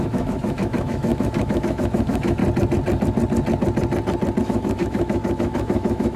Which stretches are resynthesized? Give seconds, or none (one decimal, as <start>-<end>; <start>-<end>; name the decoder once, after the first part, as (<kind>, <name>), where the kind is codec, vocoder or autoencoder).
0.0-2.4 (autoencoder, DAC-VAE); 4.4-6.2